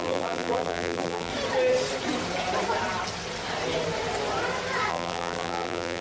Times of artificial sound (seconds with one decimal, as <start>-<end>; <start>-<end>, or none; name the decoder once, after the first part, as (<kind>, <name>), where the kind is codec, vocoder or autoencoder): 0.0-1.3 (vocoder, BigVGAN v2); 4.9-6.0